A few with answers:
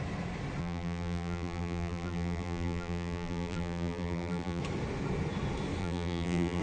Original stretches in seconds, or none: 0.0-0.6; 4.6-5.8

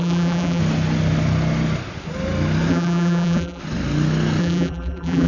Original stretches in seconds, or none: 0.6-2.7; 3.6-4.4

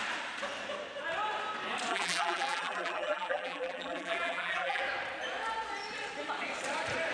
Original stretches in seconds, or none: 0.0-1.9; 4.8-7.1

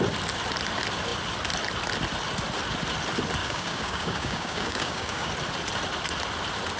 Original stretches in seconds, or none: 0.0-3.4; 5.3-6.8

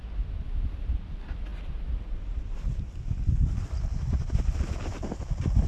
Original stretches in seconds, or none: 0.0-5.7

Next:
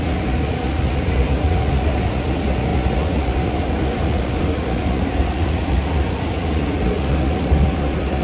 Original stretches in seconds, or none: none

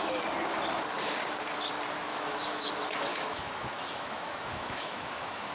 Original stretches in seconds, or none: 0.0-2.1; 2.7-3.1

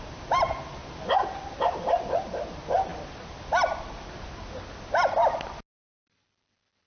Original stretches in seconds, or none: 0.0-6.9